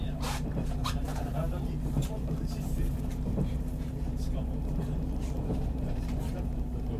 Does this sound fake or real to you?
fake